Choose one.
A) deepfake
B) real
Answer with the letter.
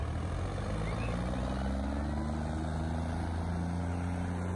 B